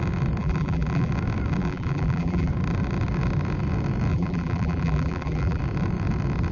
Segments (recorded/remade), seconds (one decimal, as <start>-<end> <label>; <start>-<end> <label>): 0.0-0.4 recorded; 0.4-1.1 remade; 1.1-1.6 recorded; 1.6-2.5 remade; 2.5-4.1 recorded; 4.1-5.6 remade; 5.6-6.5 recorded